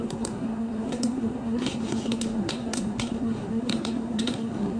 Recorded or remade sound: remade